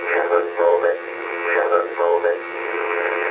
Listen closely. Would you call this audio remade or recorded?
remade